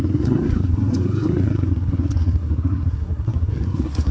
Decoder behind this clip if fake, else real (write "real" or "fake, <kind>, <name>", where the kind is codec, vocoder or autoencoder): fake, codec, SNAC